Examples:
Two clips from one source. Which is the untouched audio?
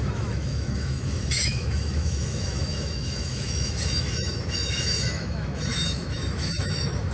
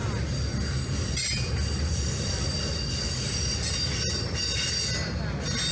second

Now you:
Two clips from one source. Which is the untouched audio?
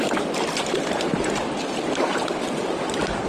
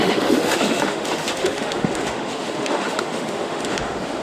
first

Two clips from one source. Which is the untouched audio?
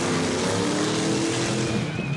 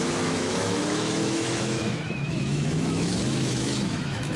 first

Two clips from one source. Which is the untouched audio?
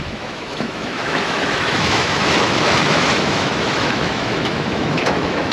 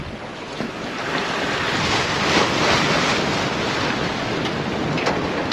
second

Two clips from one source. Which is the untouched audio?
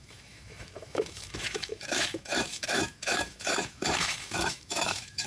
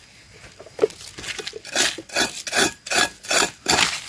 second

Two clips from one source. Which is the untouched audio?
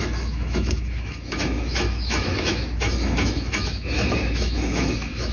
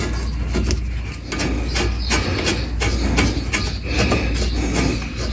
second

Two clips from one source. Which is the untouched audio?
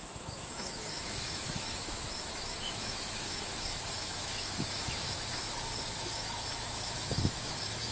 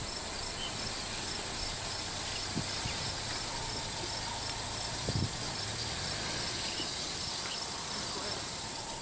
second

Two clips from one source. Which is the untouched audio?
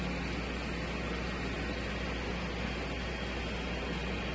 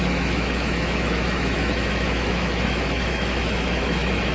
first